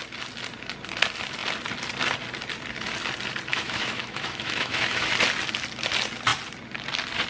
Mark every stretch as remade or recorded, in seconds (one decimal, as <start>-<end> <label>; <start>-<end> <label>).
0.0-3.5 recorded; 3.5-5.1 remade; 5.1-7.3 recorded